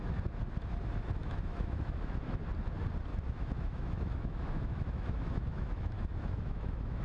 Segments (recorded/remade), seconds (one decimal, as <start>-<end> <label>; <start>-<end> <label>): 0.0-1.2 recorded; 1.2-2.4 remade; 2.4-3.1 recorded; 3.1-7.0 remade